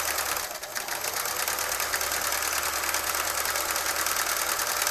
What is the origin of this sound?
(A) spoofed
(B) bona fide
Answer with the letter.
B